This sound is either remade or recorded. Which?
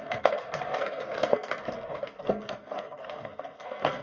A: remade